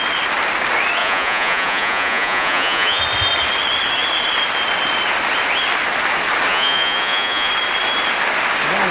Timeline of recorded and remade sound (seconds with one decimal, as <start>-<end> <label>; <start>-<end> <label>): 0.0-1.0 recorded; 1.0-3.0 remade; 3.0-6.5 recorded; 6.5-7.5 remade; 7.5-8.9 recorded

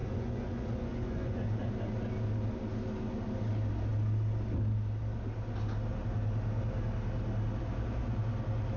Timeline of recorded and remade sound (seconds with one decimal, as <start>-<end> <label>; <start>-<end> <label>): 0.0-1.7 remade; 1.7-8.8 recorded

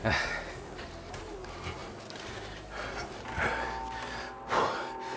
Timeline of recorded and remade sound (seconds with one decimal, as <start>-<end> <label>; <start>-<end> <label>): 0.0-5.2 recorded

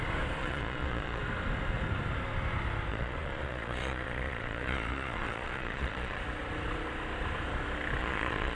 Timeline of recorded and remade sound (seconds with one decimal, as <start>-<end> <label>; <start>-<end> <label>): 0.0-0.4 recorded; 0.4-1.2 remade; 1.2-2.9 recorded; 2.9-6.2 remade; 6.2-8.0 recorded; 8.0-8.6 remade

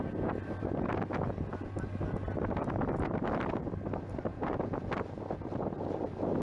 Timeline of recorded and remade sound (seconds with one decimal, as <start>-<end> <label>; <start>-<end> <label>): 0.0-4.3 recorded; 4.3-4.9 remade; 4.9-6.4 recorded